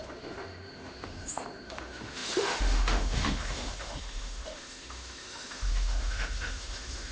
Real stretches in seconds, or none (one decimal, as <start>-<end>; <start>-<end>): none